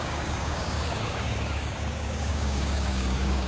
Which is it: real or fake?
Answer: fake